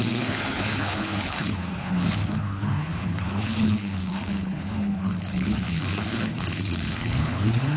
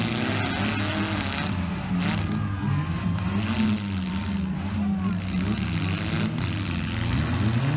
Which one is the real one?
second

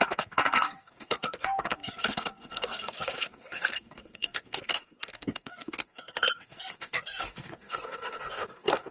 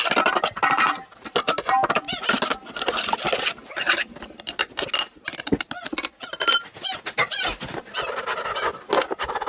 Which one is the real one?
second